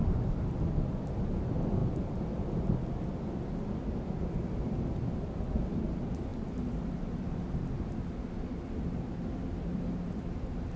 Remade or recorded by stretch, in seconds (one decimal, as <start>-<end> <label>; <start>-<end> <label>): 0.0-10.8 recorded